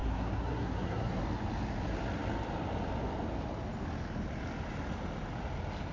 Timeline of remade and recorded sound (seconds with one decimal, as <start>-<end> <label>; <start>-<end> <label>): 0.0-1.2 remade; 1.2-5.9 recorded